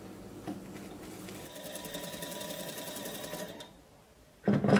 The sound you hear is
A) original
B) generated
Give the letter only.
A